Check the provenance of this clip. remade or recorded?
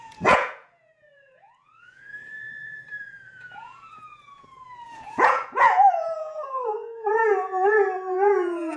remade